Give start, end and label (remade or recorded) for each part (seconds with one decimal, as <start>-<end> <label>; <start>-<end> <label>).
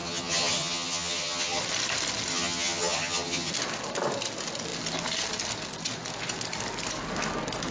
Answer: 0.0-1.6 remade; 1.6-2.3 recorded; 2.3-3.5 remade; 3.5-7.7 recorded